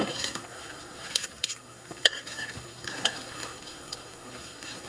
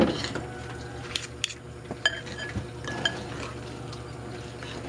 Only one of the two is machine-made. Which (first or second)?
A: first